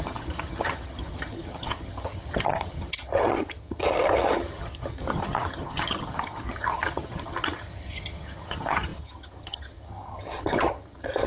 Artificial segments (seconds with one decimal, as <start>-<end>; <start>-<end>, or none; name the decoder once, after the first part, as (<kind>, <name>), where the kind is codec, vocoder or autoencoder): 0.0-11.3 (vocoder, HiFi-GAN)